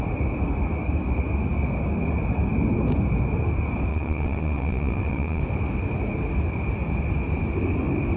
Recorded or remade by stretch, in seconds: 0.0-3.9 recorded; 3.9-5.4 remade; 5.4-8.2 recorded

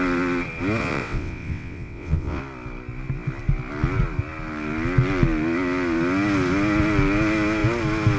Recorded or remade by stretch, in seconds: 0.0-0.8 recorded; 0.8-2.4 remade; 2.4-8.2 recorded

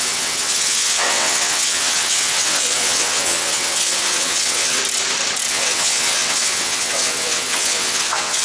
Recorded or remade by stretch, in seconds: 0.0-4.8 remade; 4.8-5.5 recorded; 5.5-8.4 remade

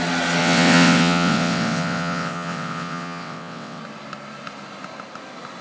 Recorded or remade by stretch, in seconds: 0.0-0.4 recorded; 0.4-3.8 remade; 3.8-5.6 recorded

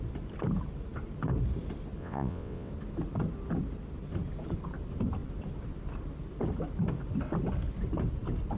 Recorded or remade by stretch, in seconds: 0.0-2.0 recorded; 2.0-2.7 remade; 2.7-8.6 recorded

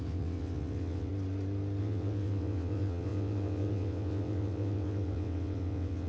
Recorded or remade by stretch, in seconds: 0.0-1.1 remade; 1.1-1.8 recorded; 1.8-6.1 remade

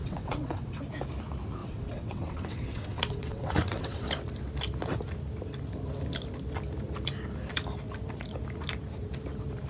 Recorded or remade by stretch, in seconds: 0.0-0.8 remade; 0.8-1.6 recorded; 1.6-4.1 remade; 4.1-9.7 recorded

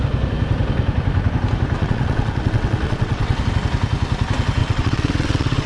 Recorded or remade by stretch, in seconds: 0.0-1.8 recorded; 1.8-3.4 remade; 3.4-4.6 recorded; 4.6-5.7 remade